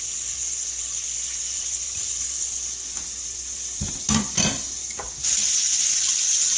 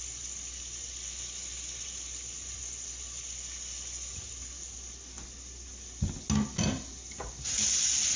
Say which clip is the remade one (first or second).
first